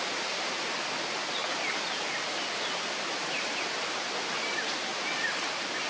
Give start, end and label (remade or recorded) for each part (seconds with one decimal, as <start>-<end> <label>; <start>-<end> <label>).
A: 0.0-5.9 recorded